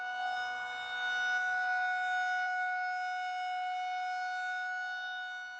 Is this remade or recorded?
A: recorded